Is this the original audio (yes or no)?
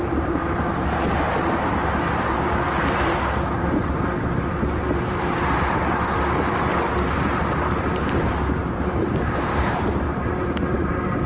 no